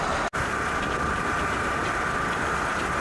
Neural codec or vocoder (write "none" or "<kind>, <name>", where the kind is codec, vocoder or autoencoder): none